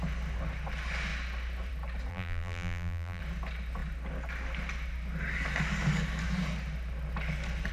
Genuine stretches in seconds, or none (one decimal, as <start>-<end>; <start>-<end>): 0.0-2.1; 3.2-7.7